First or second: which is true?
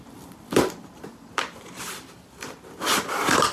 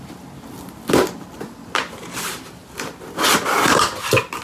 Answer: second